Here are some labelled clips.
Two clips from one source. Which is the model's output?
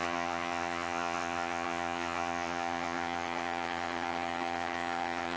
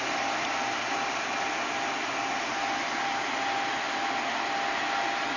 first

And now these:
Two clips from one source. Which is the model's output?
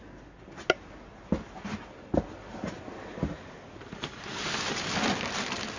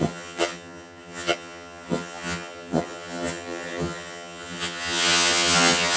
second